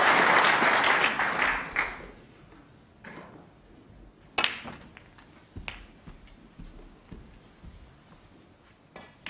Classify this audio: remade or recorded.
recorded